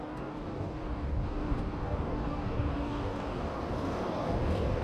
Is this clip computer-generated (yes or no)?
yes